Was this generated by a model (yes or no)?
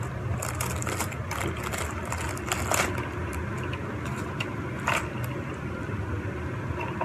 no